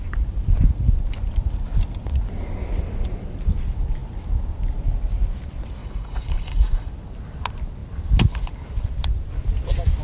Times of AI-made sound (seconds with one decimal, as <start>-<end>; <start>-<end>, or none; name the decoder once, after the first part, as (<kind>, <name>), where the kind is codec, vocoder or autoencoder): 5.8-6.9 (vocoder, Vocos)